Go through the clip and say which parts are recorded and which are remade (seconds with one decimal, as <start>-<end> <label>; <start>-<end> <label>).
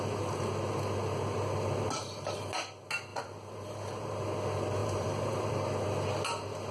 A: 0.0-3.1 recorded; 3.1-4.2 remade; 4.2-4.8 recorded; 4.8-5.5 remade; 5.5-6.7 recorded